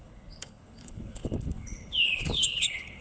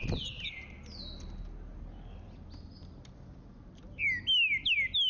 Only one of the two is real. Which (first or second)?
second